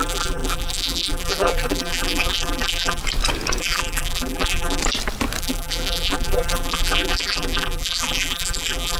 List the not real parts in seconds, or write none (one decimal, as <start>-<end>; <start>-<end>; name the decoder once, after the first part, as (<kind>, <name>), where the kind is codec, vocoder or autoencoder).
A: 0.0-3.0 (vocoder, BigVGAN v2); 3.6-4.8; 5.4-9.0